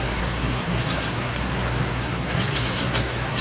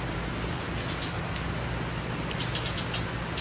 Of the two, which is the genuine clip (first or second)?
second